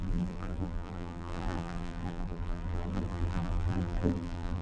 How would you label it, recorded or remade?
remade